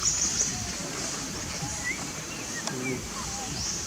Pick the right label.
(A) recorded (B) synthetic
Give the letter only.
A